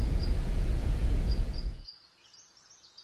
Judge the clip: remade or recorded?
remade